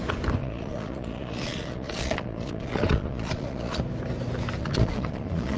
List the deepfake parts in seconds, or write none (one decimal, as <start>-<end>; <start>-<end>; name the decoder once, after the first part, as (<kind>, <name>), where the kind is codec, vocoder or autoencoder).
0.4-3.8 (vocoder, Vocos); 4.6-5.6